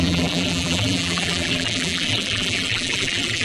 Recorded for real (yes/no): no